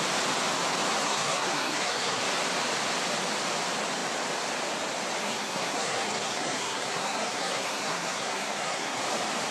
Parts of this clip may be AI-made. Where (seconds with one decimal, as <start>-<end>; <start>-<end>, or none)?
1.0-2.2; 5.2-9.0